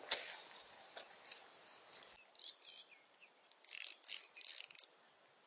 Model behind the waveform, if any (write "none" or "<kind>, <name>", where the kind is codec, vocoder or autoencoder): none